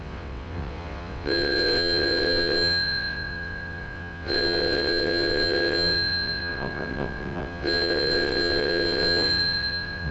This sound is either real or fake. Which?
fake